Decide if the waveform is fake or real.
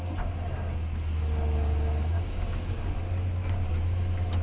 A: real